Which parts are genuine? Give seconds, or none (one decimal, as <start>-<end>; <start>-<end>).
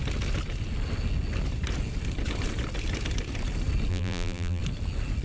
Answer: 0.0-3.9; 4.6-5.2